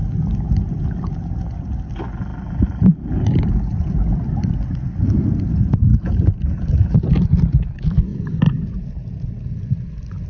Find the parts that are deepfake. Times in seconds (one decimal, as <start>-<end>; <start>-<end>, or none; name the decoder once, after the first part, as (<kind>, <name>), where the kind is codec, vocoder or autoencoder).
none